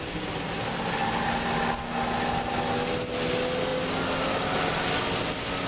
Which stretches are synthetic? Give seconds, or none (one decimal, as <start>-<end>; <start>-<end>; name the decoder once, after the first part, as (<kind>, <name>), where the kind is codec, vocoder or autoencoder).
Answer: none